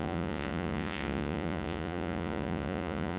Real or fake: fake